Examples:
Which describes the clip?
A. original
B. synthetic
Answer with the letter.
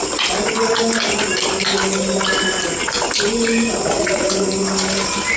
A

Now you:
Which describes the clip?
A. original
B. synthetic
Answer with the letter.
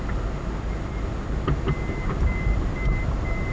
A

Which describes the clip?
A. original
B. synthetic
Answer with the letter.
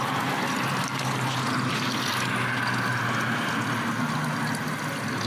A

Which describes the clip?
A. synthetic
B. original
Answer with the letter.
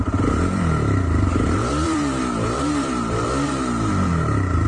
A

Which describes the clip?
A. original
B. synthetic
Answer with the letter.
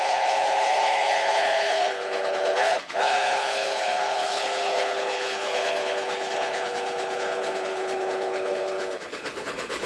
B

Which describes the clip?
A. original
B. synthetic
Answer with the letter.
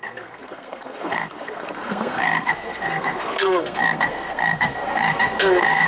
B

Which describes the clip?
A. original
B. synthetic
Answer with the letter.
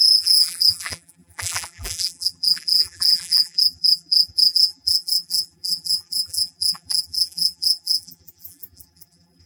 B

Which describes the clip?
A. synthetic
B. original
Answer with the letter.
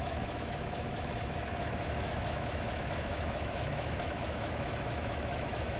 A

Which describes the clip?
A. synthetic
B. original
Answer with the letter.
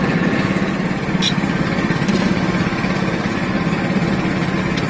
B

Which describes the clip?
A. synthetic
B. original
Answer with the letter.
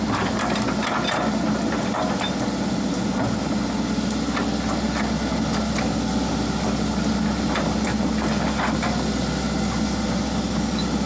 B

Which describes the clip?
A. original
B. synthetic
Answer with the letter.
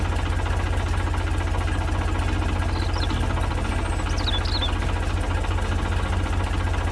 A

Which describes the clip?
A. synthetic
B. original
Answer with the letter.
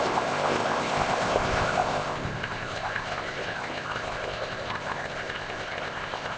A